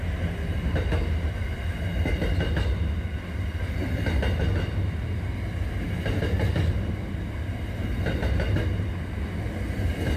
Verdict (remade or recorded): recorded